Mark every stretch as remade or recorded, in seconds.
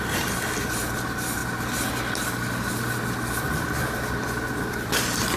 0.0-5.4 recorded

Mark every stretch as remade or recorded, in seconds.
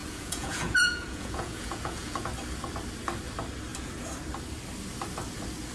0.0-2.3 remade; 2.3-5.7 recorded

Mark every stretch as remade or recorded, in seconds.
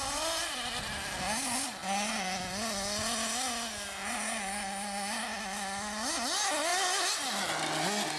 0.0-8.2 recorded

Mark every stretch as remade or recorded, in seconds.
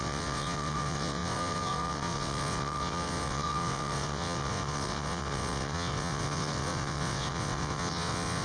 0.0-8.4 remade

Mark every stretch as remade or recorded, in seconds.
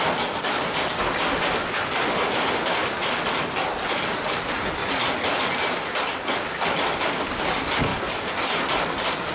0.0-2.8 recorded; 2.8-3.5 remade; 3.5-7.9 recorded; 7.9-8.4 remade; 8.4-9.3 recorded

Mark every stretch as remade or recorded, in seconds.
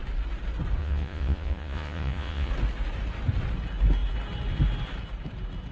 0.0-0.8 recorded; 0.8-2.5 remade; 2.5-5.7 recorded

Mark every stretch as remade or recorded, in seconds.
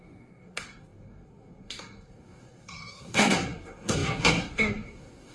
0.0-5.3 remade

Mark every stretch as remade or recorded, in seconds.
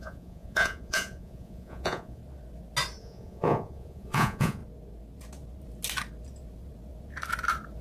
0.0-2.2 remade; 2.2-3.0 recorded; 3.0-4.6 remade; 4.6-7.8 recorded